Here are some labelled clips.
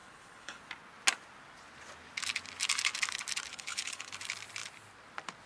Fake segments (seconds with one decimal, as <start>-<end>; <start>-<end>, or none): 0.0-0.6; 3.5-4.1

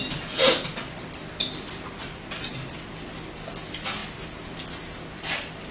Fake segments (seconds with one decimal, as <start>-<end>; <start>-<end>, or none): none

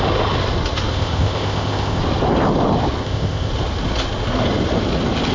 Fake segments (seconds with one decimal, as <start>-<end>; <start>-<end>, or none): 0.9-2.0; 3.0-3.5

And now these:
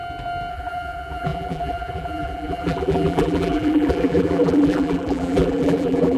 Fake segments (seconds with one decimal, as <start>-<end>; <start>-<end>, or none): 0.5-6.2

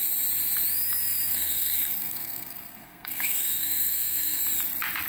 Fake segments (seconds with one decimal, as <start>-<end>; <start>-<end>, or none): 1.3-4.4